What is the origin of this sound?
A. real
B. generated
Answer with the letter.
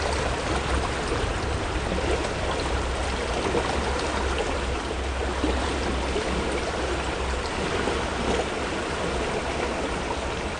A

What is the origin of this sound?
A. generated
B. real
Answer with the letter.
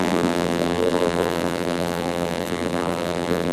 A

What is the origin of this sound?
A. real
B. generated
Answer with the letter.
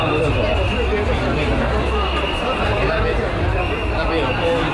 A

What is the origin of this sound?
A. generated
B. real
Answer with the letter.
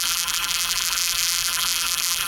A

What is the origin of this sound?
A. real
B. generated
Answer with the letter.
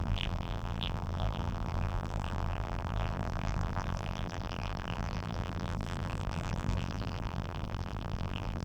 B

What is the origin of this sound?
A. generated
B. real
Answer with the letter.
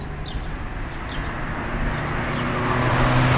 B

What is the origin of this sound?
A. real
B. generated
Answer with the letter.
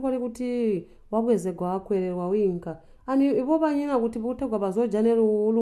A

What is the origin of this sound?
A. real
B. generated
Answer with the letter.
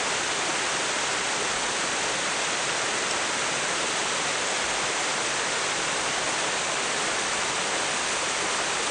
A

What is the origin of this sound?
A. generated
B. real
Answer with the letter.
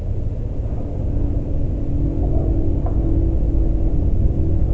B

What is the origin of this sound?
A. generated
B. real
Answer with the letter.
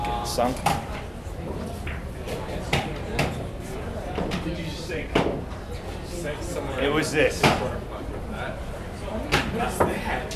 A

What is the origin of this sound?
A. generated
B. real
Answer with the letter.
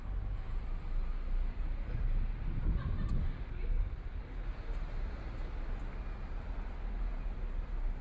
B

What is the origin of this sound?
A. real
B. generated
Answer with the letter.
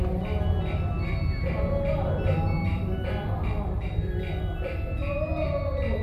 A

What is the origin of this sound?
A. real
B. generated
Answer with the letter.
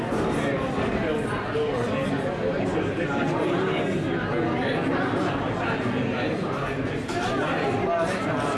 A